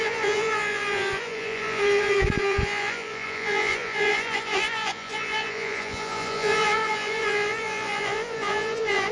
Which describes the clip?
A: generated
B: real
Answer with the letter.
A